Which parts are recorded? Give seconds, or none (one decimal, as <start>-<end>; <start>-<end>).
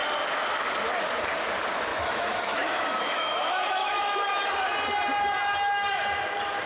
0.0-1.9; 4.5-6.7